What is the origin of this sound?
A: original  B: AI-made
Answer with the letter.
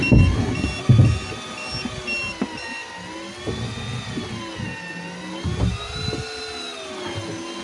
A